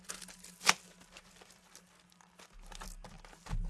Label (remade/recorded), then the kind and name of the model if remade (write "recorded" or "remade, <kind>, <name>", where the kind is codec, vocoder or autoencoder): recorded